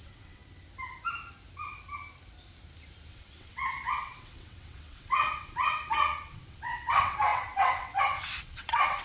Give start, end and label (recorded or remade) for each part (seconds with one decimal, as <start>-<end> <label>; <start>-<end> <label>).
0.0-0.4 remade; 0.4-3.1 recorded; 3.1-9.0 remade